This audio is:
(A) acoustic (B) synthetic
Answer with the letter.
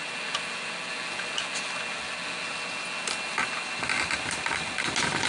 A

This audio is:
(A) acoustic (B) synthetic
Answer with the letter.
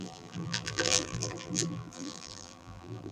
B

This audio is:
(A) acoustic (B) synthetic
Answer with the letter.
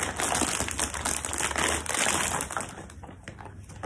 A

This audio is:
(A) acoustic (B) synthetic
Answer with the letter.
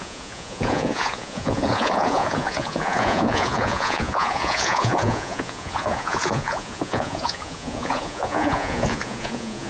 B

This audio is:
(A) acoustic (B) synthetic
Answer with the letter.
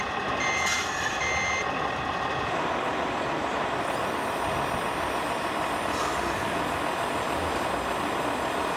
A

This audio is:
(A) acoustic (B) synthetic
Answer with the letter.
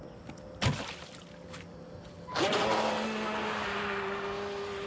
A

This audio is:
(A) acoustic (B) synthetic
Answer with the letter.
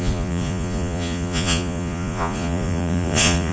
B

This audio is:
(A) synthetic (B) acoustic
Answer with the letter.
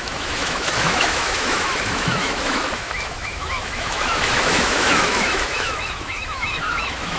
A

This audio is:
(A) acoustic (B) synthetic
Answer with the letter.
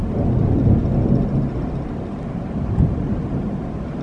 A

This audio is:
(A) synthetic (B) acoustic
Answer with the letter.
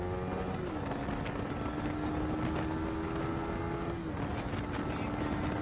B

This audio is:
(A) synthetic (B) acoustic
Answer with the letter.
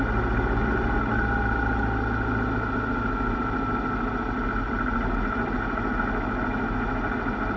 B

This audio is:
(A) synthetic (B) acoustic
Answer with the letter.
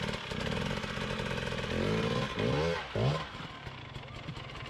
B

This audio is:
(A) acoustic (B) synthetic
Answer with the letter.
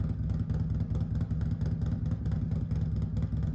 A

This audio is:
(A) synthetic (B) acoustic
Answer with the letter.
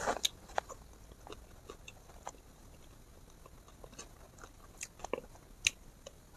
B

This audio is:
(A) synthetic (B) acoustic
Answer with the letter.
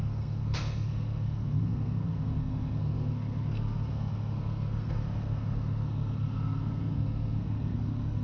A